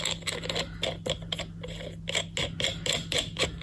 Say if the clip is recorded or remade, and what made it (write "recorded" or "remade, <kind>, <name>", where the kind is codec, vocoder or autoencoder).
recorded